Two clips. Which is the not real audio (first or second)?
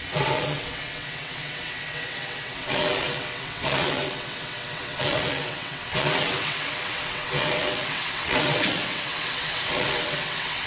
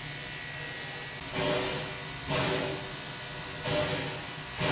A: first